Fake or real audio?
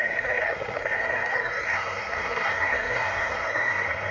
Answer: fake